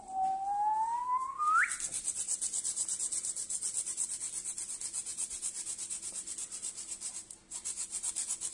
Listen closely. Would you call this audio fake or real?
real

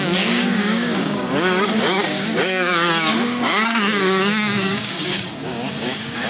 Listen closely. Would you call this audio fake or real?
fake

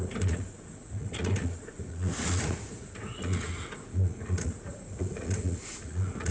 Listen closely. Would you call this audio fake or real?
fake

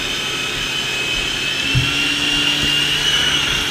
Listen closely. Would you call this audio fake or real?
real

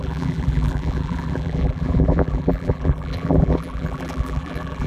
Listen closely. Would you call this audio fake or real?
fake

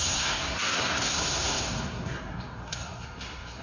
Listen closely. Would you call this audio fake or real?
fake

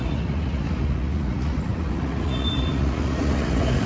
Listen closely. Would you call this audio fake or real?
fake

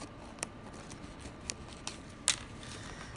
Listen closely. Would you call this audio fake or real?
real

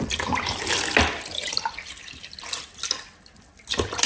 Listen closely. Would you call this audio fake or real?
real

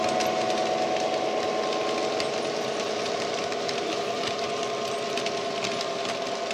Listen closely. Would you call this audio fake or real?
real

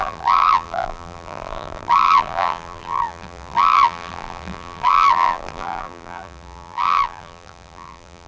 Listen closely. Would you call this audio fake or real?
fake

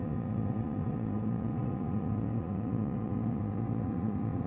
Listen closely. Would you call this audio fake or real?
fake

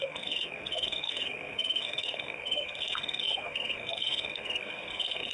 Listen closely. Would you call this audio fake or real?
fake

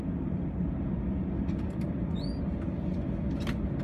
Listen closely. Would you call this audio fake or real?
real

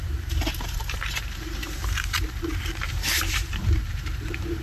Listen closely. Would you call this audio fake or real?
fake